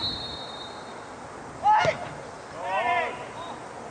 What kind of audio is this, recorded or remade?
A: recorded